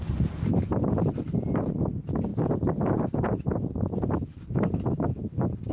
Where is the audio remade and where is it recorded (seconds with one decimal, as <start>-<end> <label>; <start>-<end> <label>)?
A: 0.0-5.7 remade